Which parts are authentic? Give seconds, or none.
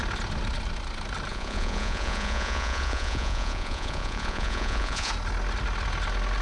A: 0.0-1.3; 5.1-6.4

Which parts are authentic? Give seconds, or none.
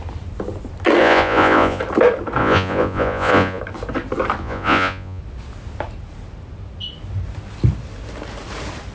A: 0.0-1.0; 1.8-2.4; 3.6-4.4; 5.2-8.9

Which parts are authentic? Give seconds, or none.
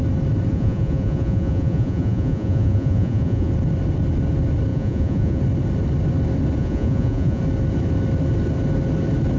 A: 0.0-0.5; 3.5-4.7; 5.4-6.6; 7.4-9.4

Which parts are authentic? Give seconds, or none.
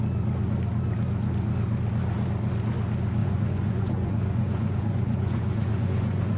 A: 0.0-3.2